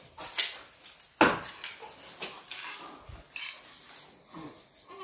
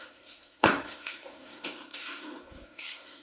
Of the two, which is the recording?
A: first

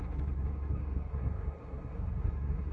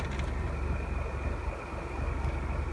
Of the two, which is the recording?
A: second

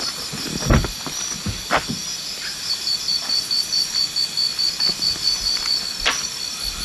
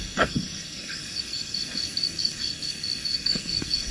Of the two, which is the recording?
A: first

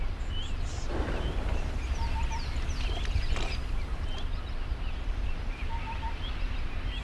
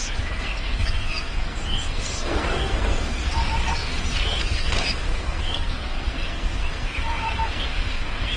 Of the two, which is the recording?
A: first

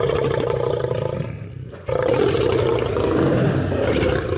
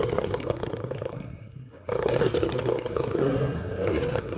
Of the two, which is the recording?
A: first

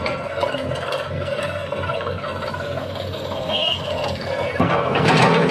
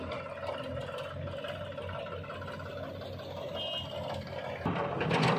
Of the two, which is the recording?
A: second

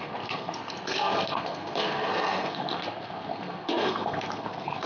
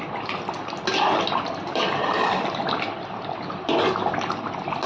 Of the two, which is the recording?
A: second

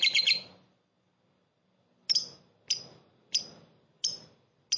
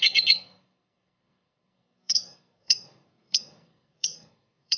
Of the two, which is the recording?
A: first